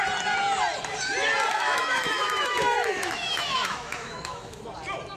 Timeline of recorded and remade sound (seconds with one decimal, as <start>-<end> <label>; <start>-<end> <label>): 0.0-1.5 recorded; 1.5-4.6 remade; 4.6-5.2 recorded